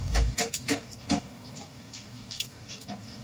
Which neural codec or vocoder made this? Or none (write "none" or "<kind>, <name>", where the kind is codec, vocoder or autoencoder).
codec, DAC